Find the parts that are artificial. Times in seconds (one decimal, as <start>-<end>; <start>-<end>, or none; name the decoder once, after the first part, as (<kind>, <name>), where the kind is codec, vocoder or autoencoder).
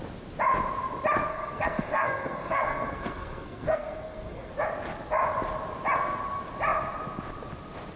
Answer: 1.3-4.5 (codec, SNAC)